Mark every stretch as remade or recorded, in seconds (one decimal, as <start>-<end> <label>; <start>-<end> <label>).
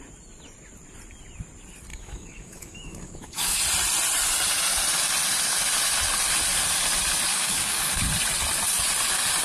0.0-1.9 recorded; 1.9-3.6 remade; 3.6-7.3 recorded; 7.3-8.0 remade; 8.0-9.4 recorded